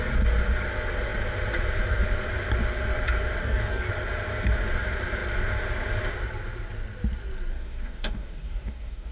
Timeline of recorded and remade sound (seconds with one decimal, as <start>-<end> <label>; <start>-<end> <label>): 0.0-3.4 recorded; 3.4-3.9 remade; 3.9-7.5 recorded; 7.5-9.1 remade